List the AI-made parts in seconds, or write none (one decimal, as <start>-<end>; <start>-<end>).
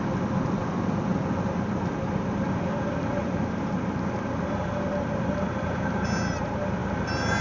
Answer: none